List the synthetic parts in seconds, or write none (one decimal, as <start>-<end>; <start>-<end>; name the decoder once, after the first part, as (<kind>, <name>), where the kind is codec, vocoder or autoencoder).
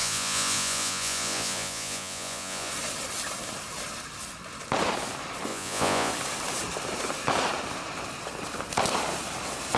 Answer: 0.0-2.7 (vocoder, Vocos); 5.5-6.1